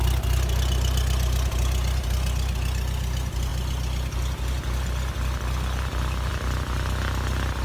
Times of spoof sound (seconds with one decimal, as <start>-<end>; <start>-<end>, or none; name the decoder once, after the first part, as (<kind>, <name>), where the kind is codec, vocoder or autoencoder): none

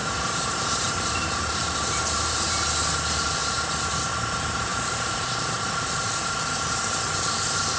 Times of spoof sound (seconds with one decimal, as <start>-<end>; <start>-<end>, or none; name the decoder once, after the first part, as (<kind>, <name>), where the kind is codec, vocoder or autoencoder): 0.0-2.5 (vocoder, BigVGAN v2); 4.7-5.7